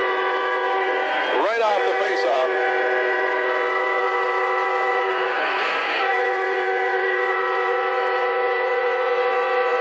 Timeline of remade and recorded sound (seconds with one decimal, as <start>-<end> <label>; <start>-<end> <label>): 0.0-9.8 remade